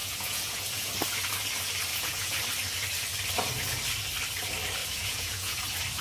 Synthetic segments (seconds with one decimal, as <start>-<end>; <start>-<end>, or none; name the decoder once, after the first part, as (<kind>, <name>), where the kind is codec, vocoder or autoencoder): 0.0-0.9 (vocoder, Vocos); 1.9-2.4; 4.8-5.6